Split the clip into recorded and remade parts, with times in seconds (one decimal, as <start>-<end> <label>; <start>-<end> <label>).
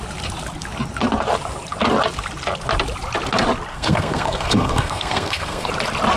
0.0-3.7 recorded; 3.7-5.7 remade; 5.7-6.2 recorded